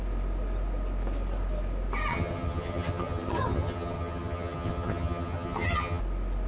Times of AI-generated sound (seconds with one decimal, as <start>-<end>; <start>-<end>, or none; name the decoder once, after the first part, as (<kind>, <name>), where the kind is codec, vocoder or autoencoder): 2.1-6.0 (vocoder, HiFi-GAN)